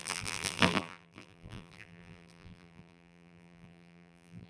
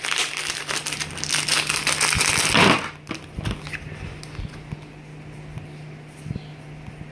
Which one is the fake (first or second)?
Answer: first